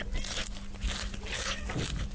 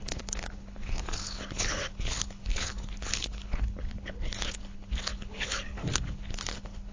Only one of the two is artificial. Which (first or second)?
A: second